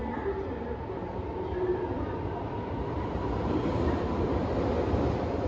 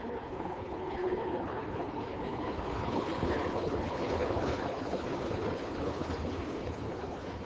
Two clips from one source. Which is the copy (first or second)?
second